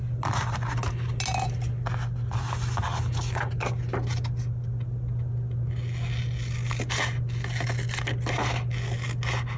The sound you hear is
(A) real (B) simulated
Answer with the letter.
A